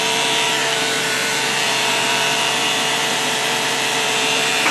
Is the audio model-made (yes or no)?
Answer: yes